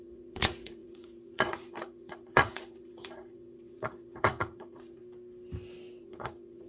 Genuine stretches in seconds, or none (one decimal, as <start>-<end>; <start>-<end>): 5.0-6.0